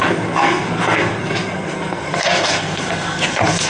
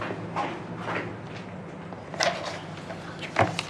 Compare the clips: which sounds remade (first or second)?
first